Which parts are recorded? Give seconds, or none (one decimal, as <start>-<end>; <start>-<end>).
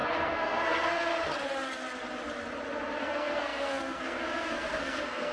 1.1-3.0